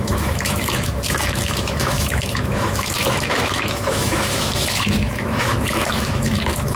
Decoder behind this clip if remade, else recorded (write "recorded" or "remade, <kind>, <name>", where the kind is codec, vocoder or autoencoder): remade, autoencoder, DAC-VAE